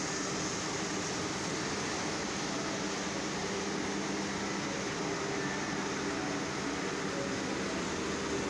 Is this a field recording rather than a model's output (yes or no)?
yes